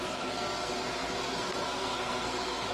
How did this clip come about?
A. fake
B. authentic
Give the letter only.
A